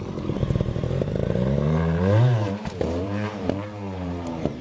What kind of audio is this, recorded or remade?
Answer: remade